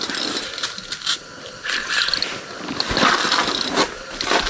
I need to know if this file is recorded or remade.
recorded